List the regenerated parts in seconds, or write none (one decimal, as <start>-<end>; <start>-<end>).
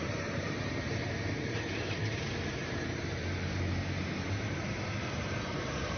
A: 0.0-6.0